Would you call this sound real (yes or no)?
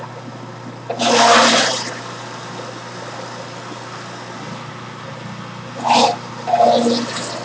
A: yes